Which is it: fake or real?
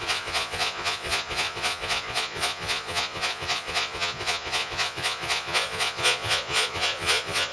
fake